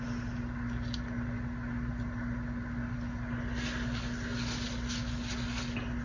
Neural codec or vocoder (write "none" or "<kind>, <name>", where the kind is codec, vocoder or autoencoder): none